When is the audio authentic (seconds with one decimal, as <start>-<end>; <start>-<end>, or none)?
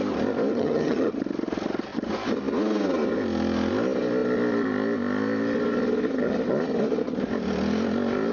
0.0-0.5; 1.1-8.3